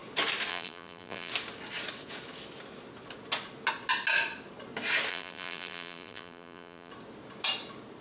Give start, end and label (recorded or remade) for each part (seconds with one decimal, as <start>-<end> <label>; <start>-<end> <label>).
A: 0.0-0.5 recorded; 0.5-1.3 remade; 1.3-5.1 recorded; 5.1-6.9 remade; 6.9-8.0 recorded